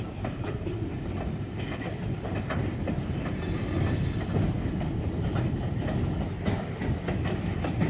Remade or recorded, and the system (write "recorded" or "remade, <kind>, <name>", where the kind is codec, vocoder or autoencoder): recorded